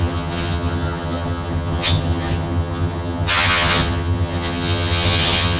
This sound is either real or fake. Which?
fake